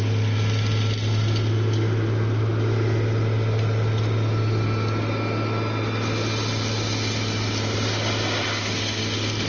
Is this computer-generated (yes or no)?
no